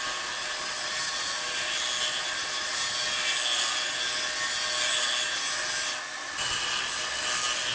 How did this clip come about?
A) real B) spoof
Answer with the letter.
A